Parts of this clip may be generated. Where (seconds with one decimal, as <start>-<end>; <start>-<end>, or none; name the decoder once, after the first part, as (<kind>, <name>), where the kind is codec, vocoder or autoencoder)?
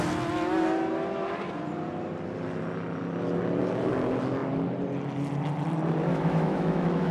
6.1-7.1 (autoencoder, DAC-VAE)